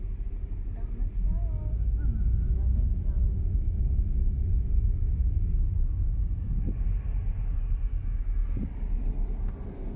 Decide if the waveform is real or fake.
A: real